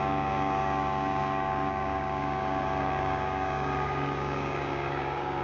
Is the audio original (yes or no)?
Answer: no